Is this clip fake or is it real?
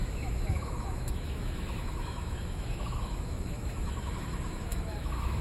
fake